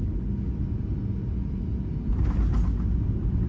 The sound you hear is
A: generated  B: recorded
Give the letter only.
B